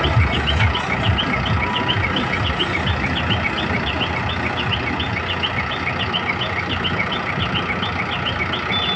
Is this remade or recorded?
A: recorded